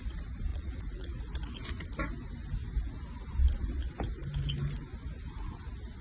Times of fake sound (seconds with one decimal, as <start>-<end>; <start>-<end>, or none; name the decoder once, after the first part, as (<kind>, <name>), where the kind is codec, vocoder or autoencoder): 0.5-1.2 (vocoder, Vocos)